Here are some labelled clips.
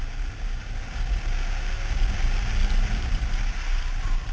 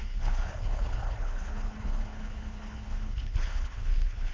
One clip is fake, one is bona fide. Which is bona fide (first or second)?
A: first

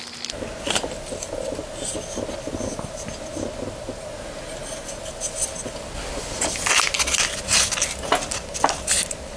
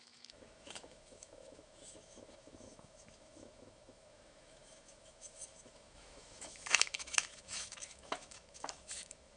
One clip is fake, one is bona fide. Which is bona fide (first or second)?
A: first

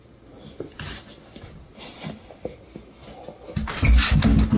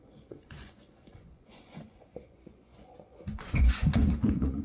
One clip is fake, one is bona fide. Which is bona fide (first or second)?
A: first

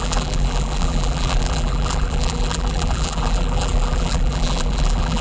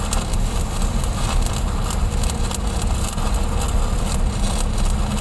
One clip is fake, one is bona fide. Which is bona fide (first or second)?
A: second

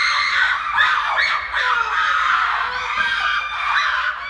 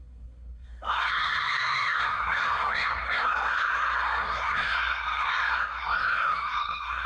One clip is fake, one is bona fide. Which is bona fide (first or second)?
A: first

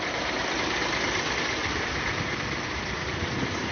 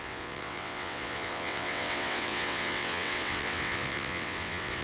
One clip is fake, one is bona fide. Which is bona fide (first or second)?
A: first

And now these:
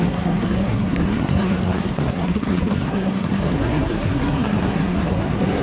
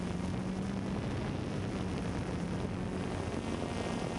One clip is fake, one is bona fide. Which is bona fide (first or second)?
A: second